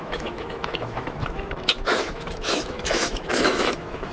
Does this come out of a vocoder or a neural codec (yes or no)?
yes